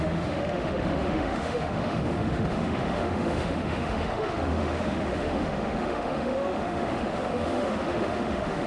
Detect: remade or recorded remade